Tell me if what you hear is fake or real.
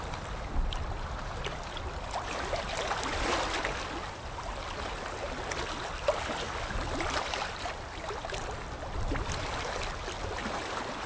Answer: real